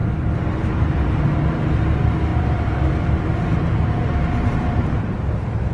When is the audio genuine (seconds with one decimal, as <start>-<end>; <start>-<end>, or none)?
1.7-2.3